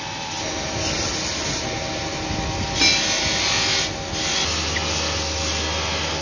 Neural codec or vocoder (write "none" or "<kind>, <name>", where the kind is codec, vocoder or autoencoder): none